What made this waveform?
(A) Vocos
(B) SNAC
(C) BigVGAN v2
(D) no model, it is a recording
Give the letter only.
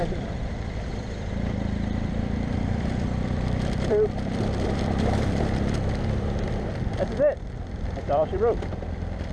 C